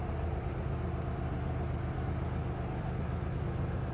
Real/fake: real